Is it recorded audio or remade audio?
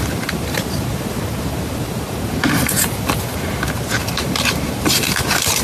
remade